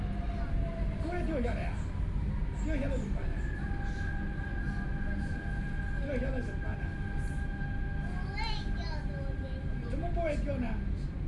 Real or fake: real